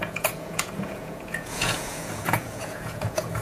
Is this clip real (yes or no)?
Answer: no